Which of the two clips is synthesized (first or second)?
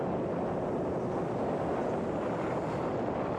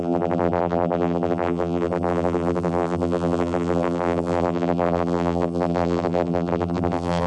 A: second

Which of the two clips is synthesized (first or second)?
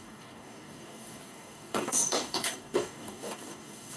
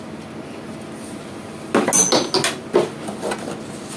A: first